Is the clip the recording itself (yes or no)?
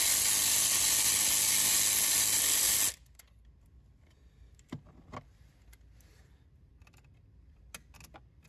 yes